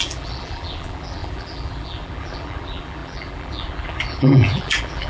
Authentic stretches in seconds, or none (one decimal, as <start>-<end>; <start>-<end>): none